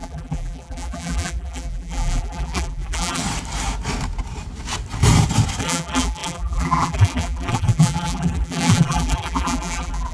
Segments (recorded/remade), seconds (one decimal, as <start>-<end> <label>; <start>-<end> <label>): 0.0-3.2 remade; 3.2-5.6 recorded; 5.6-10.1 remade